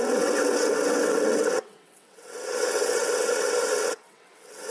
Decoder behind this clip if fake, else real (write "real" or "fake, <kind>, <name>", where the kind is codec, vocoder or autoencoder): fake, vocoder, WaveNeXt